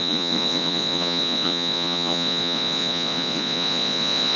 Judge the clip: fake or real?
fake